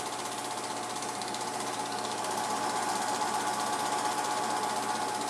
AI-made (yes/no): no